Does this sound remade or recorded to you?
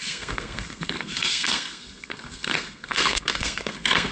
remade